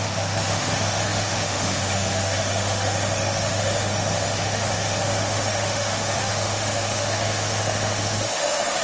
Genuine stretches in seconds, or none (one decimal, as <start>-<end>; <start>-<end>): none